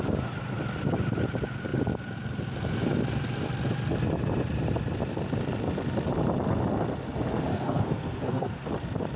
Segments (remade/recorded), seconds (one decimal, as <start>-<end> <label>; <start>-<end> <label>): 0.0-7.5 recorded; 7.5-8.7 remade; 8.7-9.2 recorded